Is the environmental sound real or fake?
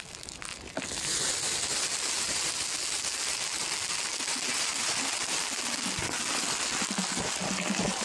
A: real